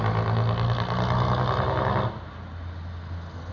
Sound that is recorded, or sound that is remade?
recorded